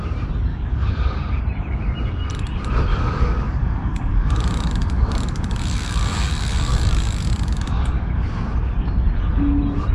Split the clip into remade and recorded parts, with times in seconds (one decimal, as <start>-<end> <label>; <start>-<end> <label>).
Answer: 0.0-0.5 recorded; 0.5-1.4 remade; 1.4-2.9 recorded; 2.9-8.1 remade; 8.1-9.9 recorded